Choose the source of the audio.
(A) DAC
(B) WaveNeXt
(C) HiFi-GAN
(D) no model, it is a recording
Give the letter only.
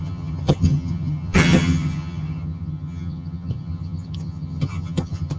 C